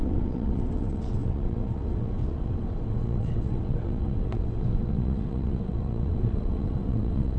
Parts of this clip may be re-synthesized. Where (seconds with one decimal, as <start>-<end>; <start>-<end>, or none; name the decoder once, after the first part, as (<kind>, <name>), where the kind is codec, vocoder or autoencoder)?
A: 0.0-7.4 (vocoder, WaveNeXt)